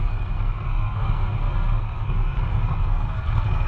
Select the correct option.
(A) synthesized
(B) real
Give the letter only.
A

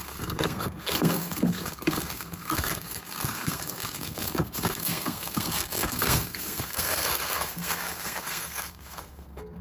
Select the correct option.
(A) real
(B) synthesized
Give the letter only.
B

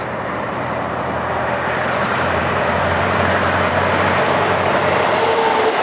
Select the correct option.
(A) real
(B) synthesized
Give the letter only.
B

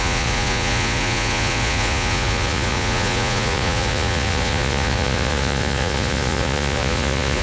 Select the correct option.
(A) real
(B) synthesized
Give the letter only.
B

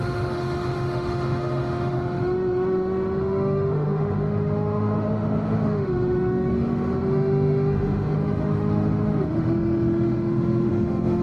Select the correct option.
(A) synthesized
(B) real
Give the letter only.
A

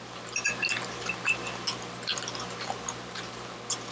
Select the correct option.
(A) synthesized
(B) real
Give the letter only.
B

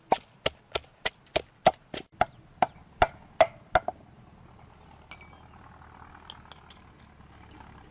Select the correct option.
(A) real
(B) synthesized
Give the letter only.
A